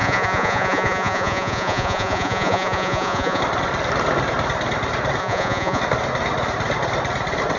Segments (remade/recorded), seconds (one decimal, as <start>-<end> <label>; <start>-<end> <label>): 0.0-3.4 remade; 3.4-5.2 recorded; 5.2-5.8 remade; 5.8-7.6 recorded